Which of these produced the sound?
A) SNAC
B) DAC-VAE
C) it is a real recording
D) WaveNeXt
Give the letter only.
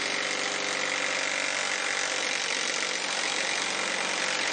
C